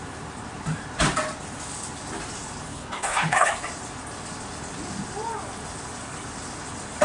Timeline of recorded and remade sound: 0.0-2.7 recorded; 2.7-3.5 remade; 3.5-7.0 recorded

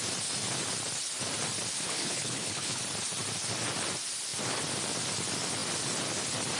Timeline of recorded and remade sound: 0.0-1.7 recorded; 1.7-2.8 remade; 2.8-6.6 recorded